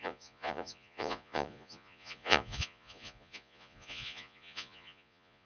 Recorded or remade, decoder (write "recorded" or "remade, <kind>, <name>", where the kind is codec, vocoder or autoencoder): remade, vocoder, Vocos